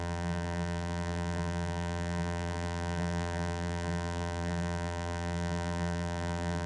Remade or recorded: remade